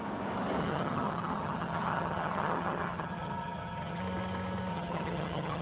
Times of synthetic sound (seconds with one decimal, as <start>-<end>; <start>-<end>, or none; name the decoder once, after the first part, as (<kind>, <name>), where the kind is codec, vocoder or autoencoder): 0.6-4.0 (vocoder, HiFi-GAN); 4.7-5.6